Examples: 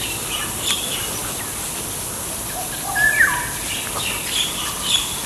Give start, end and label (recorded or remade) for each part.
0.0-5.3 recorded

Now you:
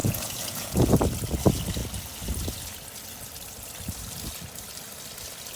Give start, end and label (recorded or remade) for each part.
0.0-0.9 remade; 0.9-5.6 recorded

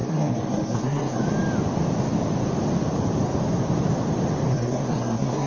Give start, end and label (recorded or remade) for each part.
0.0-1.2 remade; 1.2-4.5 recorded; 4.5-5.5 remade

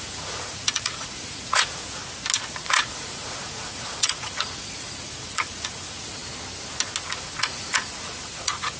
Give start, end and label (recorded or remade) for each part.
0.0-2.0 remade; 2.0-2.5 recorded; 2.5-6.2 remade; 6.2-7.0 recorded; 7.0-8.8 remade